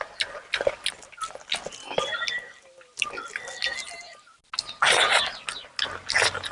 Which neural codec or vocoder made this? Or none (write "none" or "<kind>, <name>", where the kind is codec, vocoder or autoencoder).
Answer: none